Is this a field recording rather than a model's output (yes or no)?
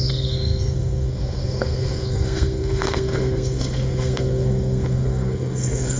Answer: no